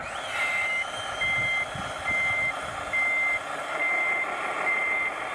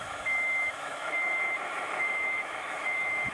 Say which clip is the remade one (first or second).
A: second